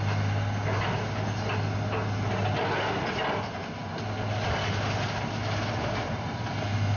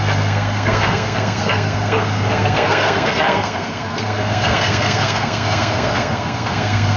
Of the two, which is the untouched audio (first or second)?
first